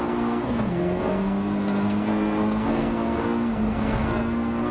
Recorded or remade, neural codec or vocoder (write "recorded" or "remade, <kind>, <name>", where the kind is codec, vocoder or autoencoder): remade, codec, SNAC